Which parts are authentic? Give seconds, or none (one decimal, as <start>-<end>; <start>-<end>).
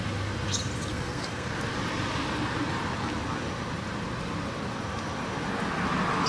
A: 0.0-0.9; 1.5-6.3